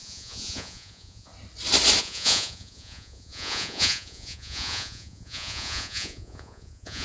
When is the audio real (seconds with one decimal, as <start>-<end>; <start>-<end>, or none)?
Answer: 1.3-2.0